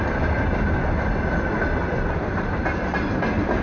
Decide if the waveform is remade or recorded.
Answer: recorded